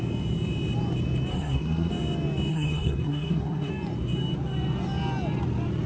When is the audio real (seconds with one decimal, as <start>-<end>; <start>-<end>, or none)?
0.0-1.3; 1.9-2.5; 3.7-5.9